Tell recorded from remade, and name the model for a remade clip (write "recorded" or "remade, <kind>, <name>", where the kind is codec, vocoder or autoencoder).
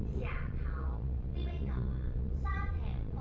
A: remade, vocoder, Vocos